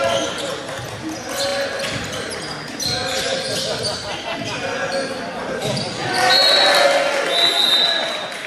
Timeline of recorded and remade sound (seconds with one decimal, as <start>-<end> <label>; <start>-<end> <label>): 0.0-8.5 recorded